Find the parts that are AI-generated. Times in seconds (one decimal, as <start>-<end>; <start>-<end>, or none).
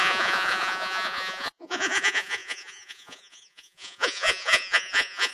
0.0-5.3